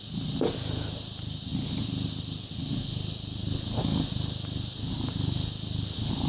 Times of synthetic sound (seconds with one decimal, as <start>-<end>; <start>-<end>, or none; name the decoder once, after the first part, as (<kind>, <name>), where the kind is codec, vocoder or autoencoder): none